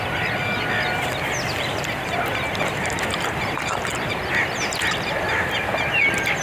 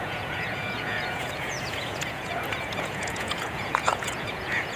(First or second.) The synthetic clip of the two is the second